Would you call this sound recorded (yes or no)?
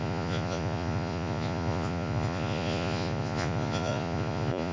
no